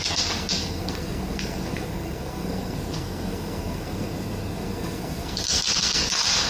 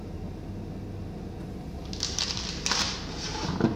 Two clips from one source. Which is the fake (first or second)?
first